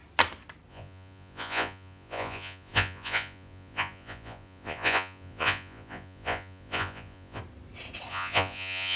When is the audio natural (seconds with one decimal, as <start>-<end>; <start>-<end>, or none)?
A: 0.0-0.7; 7.4-8.1